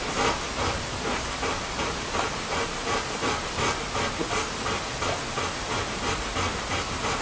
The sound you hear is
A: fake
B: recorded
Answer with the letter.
B